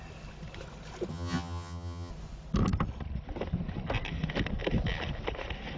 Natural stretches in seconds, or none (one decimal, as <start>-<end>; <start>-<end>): 0.0-1.1; 2.1-5.8